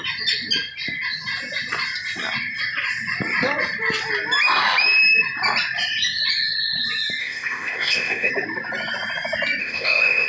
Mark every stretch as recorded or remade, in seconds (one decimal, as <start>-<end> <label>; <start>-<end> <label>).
0.0-7.2 recorded; 7.2-8.3 remade; 8.3-9.6 recorded; 9.6-10.3 remade